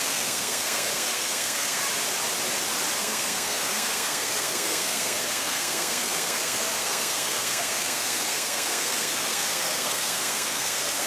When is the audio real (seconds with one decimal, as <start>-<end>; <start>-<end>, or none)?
1.8-3.0